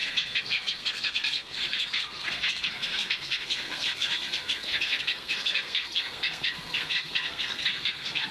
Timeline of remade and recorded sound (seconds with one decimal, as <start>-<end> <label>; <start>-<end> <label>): 0.0-8.3 remade